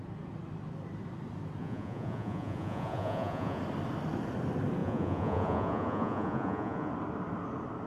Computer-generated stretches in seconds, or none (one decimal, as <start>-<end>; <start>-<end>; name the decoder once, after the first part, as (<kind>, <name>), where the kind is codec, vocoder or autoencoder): 1.6-3.6 (vocoder, Vocos); 4.8-6.9